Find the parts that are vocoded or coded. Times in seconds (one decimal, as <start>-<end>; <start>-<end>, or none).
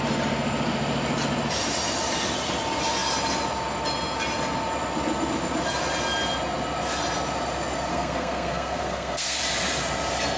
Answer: 7.9-9.4